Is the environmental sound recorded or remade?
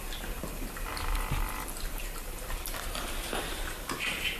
recorded